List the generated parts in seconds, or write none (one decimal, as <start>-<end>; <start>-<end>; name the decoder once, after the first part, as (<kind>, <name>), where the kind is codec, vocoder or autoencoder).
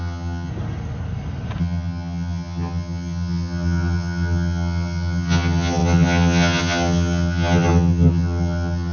0.0-0.5 (vocoder, HiFi-GAN); 1.6-8.9